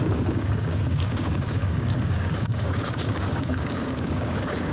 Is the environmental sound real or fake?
fake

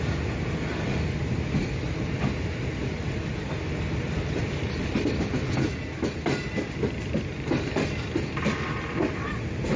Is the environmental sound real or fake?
real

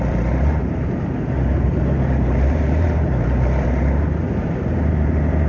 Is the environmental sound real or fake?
fake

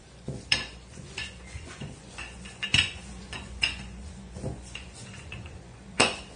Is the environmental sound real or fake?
fake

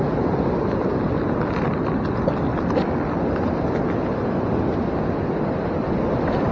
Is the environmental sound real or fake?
real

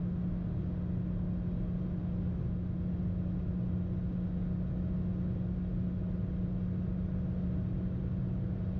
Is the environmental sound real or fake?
real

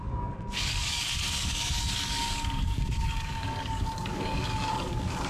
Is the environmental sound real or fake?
fake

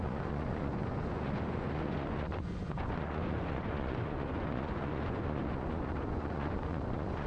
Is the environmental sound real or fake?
fake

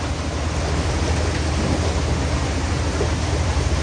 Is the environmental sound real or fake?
real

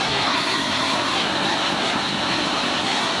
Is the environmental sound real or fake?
fake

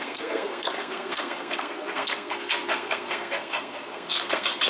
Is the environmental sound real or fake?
fake